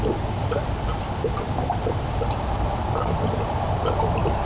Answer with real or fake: real